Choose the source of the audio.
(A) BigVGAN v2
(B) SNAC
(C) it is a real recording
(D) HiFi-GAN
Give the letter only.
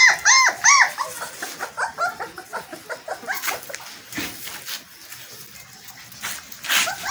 C